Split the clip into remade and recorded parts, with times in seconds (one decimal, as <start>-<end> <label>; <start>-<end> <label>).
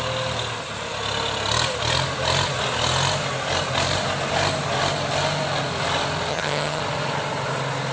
0.0-6.3 recorded; 6.3-6.8 remade; 6.8-7.9 recorded